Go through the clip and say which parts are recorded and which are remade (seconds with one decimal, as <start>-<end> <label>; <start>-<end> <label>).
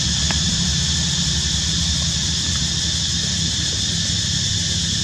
0.0-5.0 remade